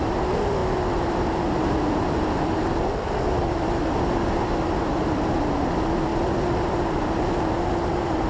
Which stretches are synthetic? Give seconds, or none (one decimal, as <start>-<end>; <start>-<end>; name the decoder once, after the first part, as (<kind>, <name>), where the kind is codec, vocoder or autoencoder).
none

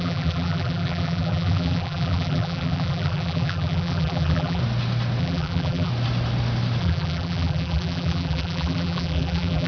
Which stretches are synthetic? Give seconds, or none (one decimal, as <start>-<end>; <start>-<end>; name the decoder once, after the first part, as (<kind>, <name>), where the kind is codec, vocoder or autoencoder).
0.0-4.6 (vocoder, BigVGAN v2); 5.2-5.9; 6.8-9.7

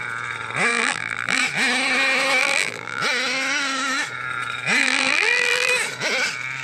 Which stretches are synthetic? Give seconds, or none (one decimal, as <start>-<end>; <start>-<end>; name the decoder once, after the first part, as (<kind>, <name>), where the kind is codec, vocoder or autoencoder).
0.7-1.4 (vocoder, BigVGAN v2); 2.4-3.0; 4.8-5.7